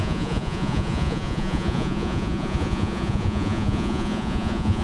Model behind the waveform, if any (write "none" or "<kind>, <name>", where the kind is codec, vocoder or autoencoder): vocoder, Vocos